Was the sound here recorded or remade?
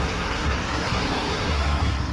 remade